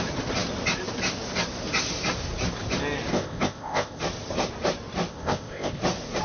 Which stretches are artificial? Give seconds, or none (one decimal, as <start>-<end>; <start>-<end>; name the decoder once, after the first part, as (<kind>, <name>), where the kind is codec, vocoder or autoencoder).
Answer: 3.1-4.0 (codec, ZipCodec); 5.1-5.8